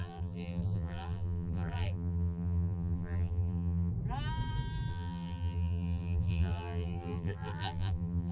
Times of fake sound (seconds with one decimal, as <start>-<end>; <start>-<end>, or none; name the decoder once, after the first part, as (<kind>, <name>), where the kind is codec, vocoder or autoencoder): 0.0-3.9 (vocoder, BigVGAN v2); 4.9-8.3

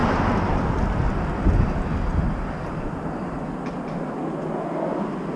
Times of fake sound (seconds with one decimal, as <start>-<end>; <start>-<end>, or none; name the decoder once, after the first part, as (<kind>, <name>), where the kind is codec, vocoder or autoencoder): none

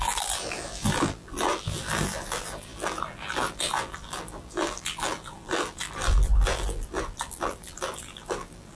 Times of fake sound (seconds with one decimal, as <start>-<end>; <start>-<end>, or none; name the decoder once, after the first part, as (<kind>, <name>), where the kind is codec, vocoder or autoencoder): 0.0-8.7 (vocoder, BigVGAN v2)

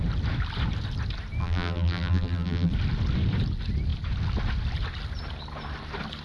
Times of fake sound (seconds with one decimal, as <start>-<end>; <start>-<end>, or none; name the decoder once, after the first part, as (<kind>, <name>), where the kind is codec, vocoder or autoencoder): 1.4-2.7 (vocoder, BigVGAN v2)